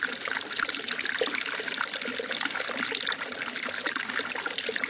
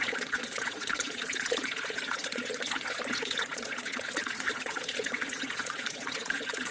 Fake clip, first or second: second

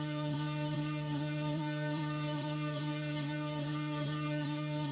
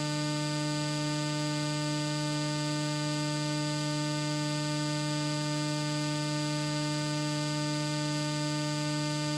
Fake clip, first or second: first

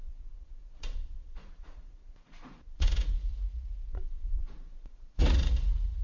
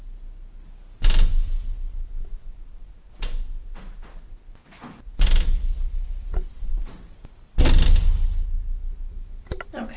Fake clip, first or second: first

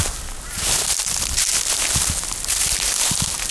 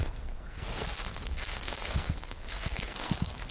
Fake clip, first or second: second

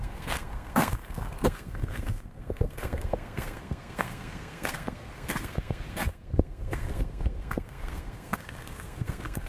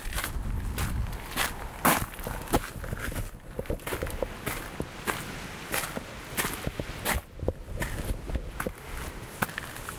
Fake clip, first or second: first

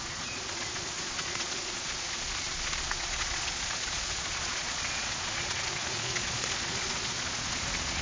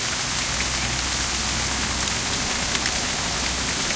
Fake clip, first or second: first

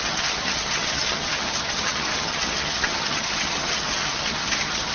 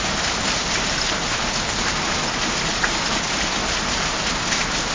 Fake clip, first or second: first